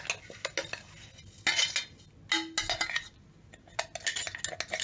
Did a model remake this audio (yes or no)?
no